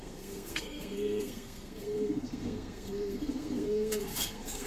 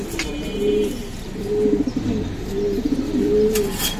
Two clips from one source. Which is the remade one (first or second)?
first